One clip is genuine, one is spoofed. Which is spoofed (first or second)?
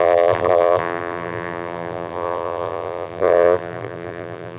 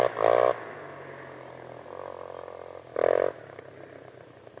first